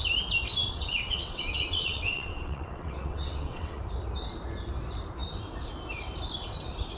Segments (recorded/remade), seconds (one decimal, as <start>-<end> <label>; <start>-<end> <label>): 0.0-0.6 recorded; 0.6-3.8 remade; 3.8-7.0 recorded